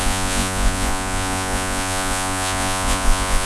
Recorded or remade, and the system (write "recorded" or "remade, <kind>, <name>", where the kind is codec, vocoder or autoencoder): remade, vocoder, Vocos